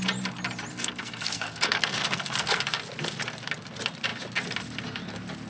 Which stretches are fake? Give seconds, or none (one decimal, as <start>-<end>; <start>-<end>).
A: 0.7-2.6